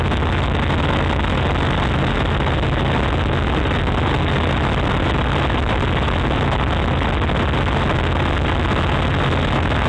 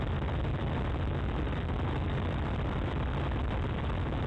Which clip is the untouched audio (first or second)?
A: first